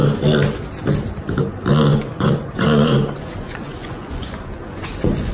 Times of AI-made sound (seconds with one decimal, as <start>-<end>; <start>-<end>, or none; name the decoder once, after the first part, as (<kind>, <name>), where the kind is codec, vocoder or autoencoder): 1.9-5.3 (vocoder, Vocos)